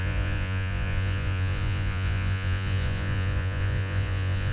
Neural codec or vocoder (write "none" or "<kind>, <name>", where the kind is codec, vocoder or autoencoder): vocoder, Vocos